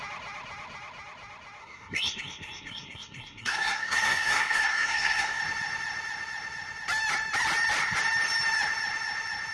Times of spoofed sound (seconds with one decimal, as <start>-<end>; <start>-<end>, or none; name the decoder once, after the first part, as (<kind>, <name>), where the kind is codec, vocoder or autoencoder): 1.6-5.4 (codec, SNAC)